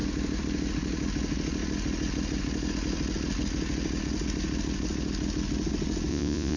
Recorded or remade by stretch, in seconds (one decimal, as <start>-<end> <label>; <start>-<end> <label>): 0.0-6.1 recorded; 6.1-6.6 remade